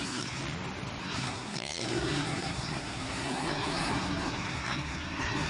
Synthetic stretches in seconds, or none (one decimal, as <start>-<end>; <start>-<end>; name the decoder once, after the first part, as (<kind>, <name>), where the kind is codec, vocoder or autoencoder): 0.0-0.4 (codec, SNAC); 1.0-5.5